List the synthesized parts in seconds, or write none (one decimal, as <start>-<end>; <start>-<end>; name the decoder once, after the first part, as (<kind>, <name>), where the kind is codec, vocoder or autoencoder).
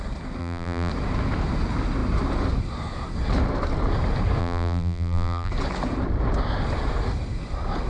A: 0.4-0.9 (vocoder, BigVGAN v2); 4.4-5.5